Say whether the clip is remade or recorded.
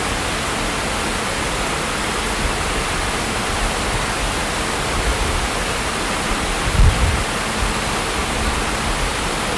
recorded